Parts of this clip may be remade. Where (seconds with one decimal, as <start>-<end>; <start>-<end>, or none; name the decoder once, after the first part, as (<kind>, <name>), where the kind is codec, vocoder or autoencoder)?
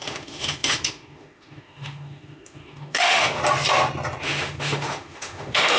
0.0-3.4 (autoencoder, DAC-VAE); 4.2-5.8